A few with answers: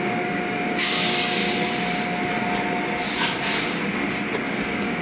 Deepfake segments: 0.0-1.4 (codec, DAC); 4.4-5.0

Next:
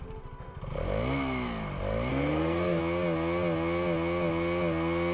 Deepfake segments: 2.1-2.8 (codec, SNAC)